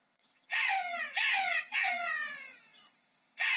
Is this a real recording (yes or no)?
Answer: no